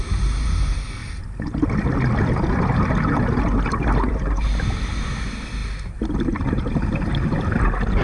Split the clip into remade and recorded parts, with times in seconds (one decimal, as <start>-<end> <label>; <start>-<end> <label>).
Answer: 0.0-8.0 recorded